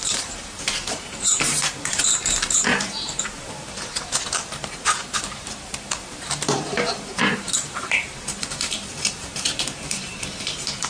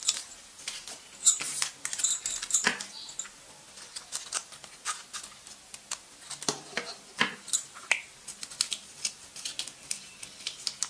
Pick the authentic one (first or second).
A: second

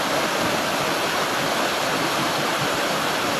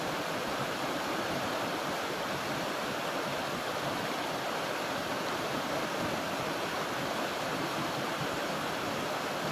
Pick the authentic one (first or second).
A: first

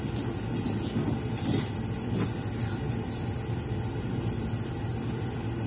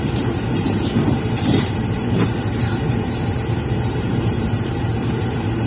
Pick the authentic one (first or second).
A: first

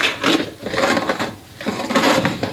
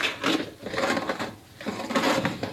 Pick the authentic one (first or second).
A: second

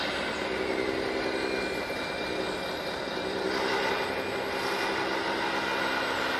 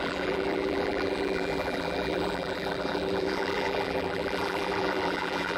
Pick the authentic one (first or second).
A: first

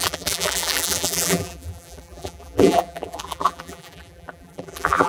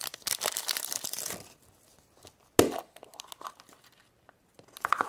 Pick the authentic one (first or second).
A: second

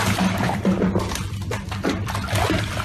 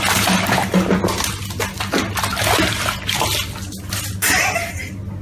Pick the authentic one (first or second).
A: second